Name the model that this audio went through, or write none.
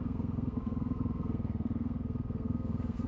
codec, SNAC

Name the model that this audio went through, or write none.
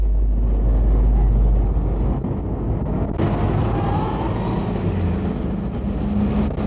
none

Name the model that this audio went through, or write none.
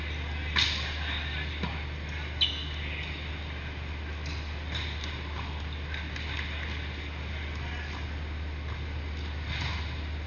none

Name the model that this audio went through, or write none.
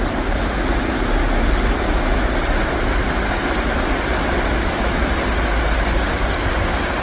none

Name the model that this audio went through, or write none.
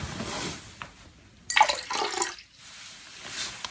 none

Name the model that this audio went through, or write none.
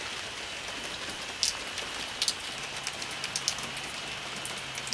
none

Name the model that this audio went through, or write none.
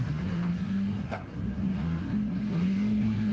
codec, SNAC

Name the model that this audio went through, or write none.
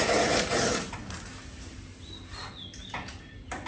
none